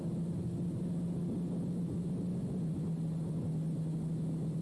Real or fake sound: real